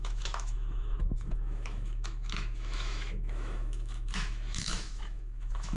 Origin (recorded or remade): remade